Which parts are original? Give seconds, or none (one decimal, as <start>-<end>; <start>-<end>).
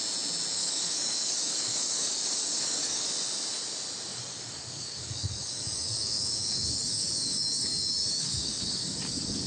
0.0-0.5; 3.1-4.1